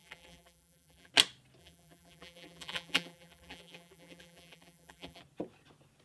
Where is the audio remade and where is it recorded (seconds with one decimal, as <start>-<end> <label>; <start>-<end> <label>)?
0.0-1.1 remade; 1.1-1.6 recorded; 1.6-5.2 remade; 5.2-6.0 recorded